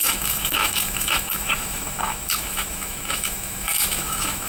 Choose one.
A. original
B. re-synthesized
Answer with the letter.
B